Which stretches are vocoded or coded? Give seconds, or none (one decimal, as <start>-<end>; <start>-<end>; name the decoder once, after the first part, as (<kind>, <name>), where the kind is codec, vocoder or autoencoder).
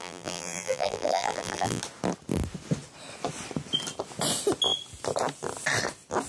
0.0-1.8 (vocoder, BigVGAN v2)